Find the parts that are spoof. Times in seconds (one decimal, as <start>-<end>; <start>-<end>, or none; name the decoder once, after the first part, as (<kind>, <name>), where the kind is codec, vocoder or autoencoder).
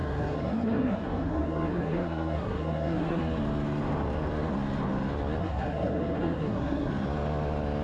0.0-3.2 (codec, SNAC); 5.4-6.9